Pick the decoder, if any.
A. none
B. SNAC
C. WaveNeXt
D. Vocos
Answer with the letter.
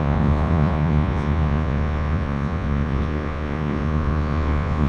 D